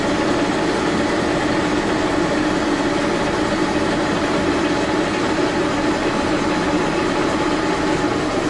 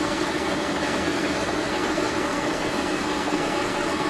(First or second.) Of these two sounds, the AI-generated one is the second